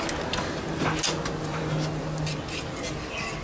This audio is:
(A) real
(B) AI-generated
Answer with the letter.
A